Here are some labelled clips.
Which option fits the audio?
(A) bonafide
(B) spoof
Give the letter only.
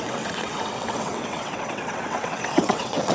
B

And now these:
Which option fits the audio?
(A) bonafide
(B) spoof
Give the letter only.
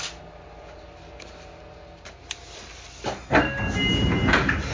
A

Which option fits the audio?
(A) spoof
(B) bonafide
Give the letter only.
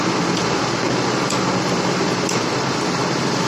B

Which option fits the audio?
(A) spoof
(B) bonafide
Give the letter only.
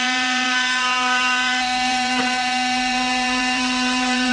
A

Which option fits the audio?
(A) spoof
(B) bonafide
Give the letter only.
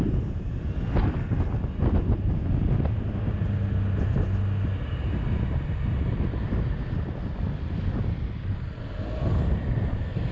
B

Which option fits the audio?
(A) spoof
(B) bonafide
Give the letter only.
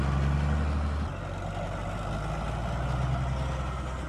B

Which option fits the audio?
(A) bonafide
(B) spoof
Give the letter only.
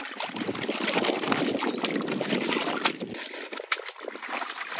A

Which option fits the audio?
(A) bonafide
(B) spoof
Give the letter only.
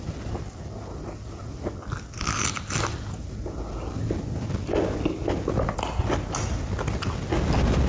A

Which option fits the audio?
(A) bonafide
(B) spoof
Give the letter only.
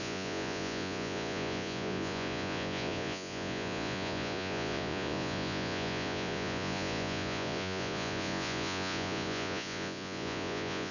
B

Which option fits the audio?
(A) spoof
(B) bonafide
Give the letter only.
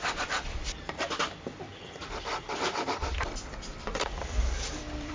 A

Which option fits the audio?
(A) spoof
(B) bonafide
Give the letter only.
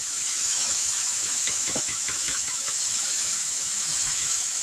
A